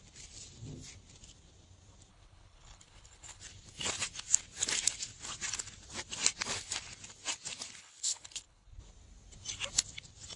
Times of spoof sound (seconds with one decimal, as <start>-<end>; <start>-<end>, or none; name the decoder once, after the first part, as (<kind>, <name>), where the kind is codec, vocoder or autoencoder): 2.1-3.4 (codec, HILCodec); 7.8-8.8